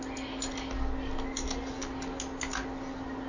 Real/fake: real